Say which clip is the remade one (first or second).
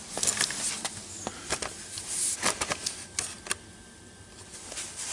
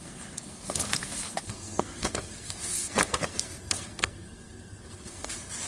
second